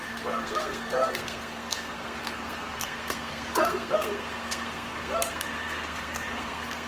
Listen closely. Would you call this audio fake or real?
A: fake